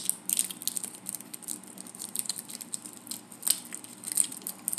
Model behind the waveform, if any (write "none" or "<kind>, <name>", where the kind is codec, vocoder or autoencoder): none